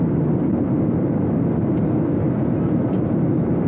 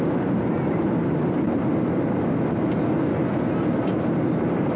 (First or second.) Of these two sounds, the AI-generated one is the first